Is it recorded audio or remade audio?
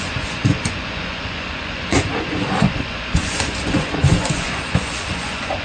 remade